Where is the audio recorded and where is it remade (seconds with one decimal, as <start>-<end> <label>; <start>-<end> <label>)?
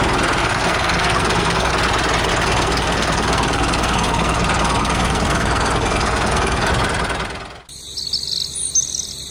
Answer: 0.0-0.4 recorded; 0.4-1.7 remade; 1.7-2.3 recorded; 2.3-6.7 remade; 6.7-9.3 recorded